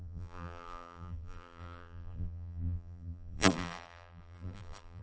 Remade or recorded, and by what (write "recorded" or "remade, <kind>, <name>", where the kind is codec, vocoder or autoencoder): remade, vocoder, BigVGAN v2